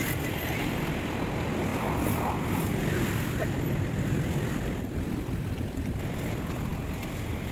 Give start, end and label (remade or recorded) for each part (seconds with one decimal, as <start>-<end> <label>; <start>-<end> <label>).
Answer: 0.0-7.5 recorded